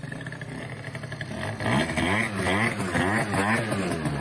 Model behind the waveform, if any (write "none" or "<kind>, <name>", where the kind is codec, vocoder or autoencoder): none